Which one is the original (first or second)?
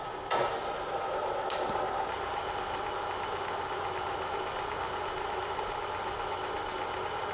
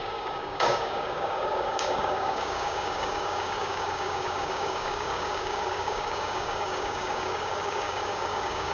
first